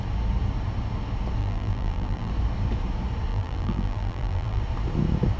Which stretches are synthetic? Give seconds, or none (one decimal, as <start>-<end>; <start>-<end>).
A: 1.4-2.3; 3.3-4.6